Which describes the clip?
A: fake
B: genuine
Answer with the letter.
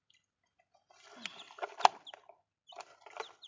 B